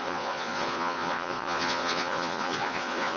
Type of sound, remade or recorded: remade